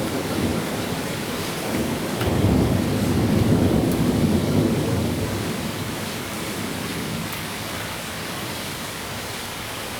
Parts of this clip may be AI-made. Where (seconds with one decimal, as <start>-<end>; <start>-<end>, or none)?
0.0-10.0